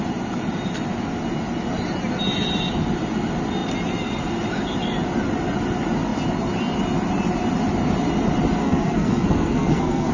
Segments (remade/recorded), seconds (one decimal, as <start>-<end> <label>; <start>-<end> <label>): 0.0-8.6 recorded; 8.6-10.1 remade